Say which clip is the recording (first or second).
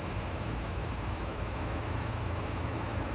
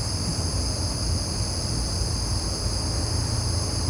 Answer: second